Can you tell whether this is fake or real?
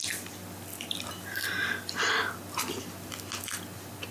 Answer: real